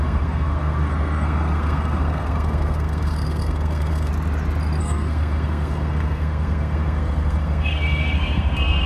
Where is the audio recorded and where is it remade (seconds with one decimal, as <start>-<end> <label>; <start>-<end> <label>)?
0.0-4.1 remade; 4.1-4.8 recorded; 4.8-8.9 remade